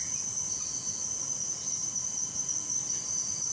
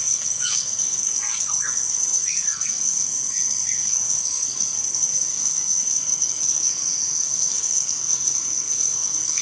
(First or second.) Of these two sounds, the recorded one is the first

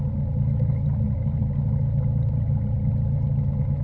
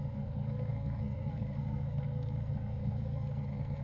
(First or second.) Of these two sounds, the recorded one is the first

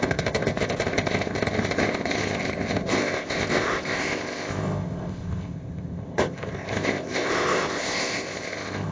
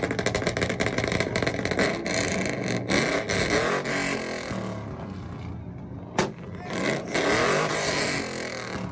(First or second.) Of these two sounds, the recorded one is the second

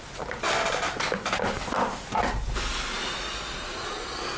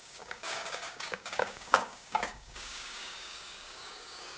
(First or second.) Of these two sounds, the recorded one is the first